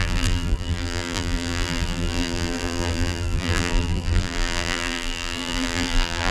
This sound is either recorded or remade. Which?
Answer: remade